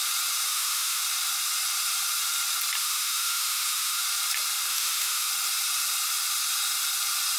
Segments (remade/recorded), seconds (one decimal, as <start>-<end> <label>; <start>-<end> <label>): 0.0-0.5 recorded; 0.5-1.0 remade; 1.0-2.8 recorded; 2.8-4.0 remade; 4.0-4.7 recorded; 4.7-5.3 remade; 5.3-7.4 recorded